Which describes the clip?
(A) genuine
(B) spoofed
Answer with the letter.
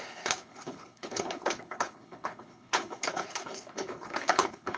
B